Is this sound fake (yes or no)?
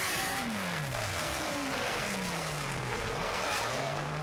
yes